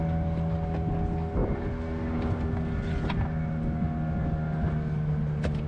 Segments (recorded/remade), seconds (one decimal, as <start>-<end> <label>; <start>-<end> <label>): 0.0-5.7 recorded